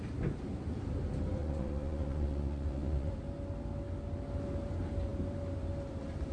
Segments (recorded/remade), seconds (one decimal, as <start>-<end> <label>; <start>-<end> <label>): 0.0-1.4 recorded; 1.4-3.1 remade; 3.1-6.3 recorded